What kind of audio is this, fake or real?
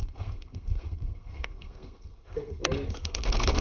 fake